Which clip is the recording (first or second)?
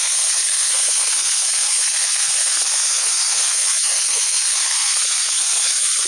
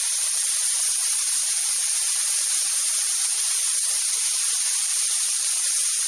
second